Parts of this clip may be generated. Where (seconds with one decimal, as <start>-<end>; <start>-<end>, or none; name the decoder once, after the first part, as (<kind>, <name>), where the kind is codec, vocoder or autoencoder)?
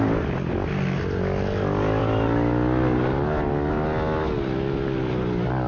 none